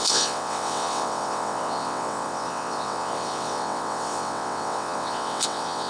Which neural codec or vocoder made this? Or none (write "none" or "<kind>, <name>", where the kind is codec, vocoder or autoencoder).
vocoder, WaveNeXt